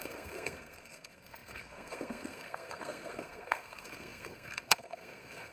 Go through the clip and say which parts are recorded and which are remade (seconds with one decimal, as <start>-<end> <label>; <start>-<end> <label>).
0.0-5.5 remade